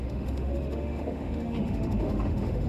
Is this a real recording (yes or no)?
no